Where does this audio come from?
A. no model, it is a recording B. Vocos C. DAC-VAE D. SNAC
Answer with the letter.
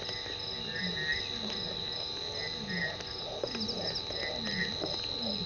A